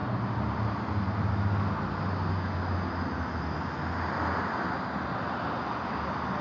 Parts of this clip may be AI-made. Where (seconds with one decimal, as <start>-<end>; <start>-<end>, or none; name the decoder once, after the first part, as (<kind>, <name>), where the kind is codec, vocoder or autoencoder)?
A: none